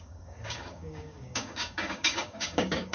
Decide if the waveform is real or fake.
fake